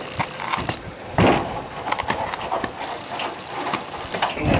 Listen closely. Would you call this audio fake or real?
real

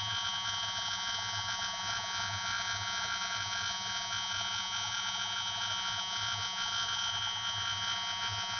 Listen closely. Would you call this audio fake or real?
fake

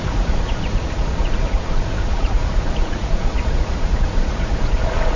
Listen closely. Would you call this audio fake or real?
fake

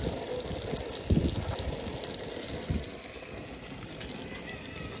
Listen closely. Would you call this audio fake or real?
real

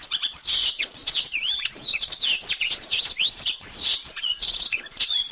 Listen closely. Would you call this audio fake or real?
fake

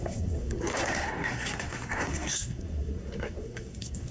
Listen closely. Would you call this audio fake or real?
fake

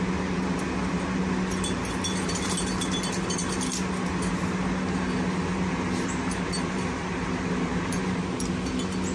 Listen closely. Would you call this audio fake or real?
real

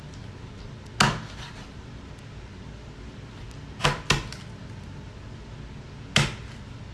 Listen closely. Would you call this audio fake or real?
real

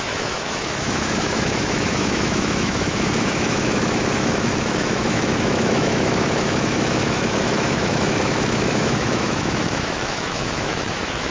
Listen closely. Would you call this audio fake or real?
fake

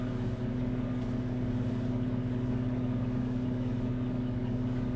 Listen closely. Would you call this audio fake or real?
fake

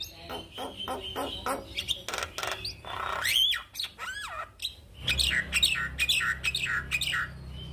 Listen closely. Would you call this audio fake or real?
real